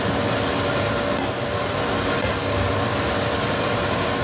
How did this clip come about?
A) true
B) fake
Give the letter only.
A